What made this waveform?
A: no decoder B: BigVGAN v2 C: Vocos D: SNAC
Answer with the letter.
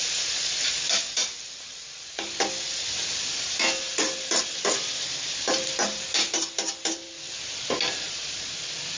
A